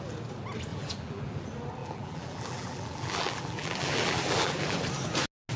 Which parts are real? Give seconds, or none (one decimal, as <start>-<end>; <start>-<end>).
0.0-0.7; 1.4-1.8; 4.8-5.6